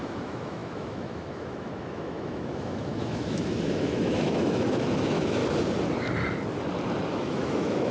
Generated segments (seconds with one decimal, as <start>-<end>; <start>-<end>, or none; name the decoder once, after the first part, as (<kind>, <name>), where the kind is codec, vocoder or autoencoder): 0.0-5.4 (autoencoder, DAC-VAE); 7.1-7.9